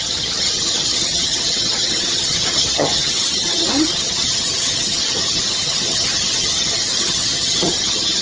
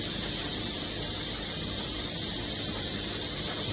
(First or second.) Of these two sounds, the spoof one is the first